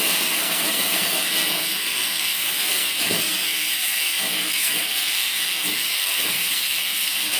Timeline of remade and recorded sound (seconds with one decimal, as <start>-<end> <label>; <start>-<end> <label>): 0.0-7.4 remade